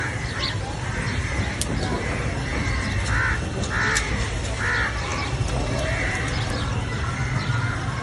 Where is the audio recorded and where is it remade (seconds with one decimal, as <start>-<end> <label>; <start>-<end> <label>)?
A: 0.0-8.0 recorded